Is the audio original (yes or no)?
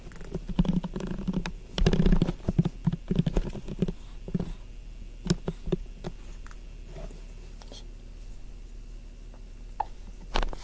yes